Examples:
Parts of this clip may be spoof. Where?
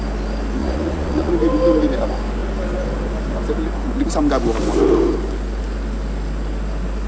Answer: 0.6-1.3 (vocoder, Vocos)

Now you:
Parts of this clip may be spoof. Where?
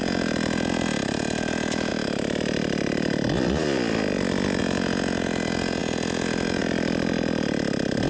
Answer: none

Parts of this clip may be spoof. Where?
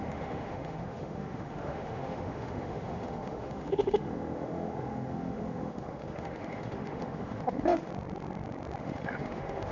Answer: 0.0-7.9 (autoencoder, DAC-VAE); 8.8-9.7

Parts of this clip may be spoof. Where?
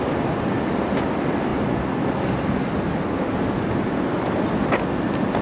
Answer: none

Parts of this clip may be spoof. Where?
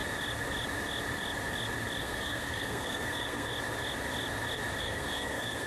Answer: 2.0-3.5 (codec, SNAC); 4.8-5.7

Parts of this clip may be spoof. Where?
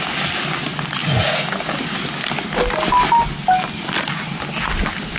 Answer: none